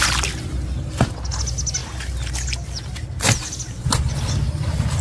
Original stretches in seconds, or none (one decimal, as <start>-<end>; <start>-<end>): 0.0-5.0